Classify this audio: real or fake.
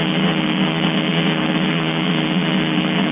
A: fake